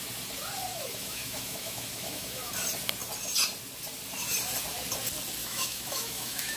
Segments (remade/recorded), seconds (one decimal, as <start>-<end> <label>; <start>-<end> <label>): 0.0-0.7 recorded; 0.7-2.5 remade; 2.5-5.4 recorded; 5.4-6.6 remade